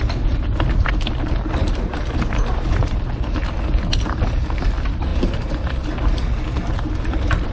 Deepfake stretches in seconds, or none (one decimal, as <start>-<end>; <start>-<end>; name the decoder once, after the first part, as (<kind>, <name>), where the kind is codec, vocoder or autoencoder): 1.6-3.0 (vocoder, BigVGAN v2); 5.1-5.6